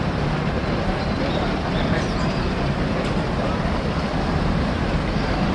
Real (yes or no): no